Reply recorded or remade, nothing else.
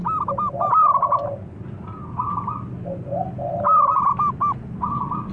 recorded